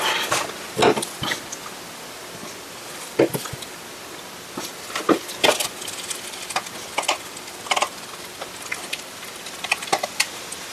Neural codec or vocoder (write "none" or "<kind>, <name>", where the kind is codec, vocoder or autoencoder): none